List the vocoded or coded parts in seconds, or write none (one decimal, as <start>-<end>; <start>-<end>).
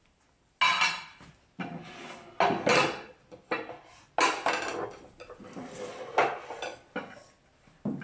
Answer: none